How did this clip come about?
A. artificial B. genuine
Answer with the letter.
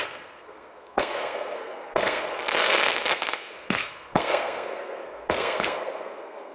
A